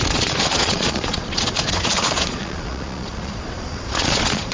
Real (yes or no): no